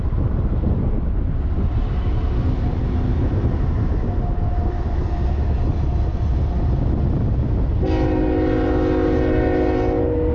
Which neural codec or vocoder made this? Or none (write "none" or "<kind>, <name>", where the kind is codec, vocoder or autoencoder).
none